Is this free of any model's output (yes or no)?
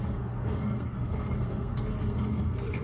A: no